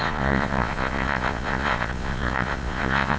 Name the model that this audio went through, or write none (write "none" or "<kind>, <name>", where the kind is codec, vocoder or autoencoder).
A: vocoder, Vocos